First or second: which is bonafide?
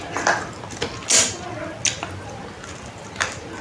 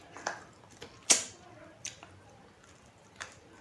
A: first